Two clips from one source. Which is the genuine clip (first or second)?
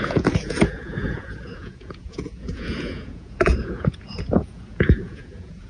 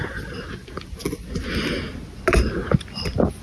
second